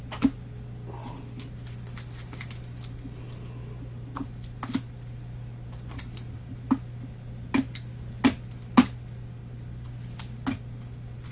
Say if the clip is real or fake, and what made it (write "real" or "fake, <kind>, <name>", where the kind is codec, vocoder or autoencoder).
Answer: real